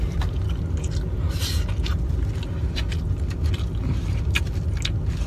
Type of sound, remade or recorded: recorded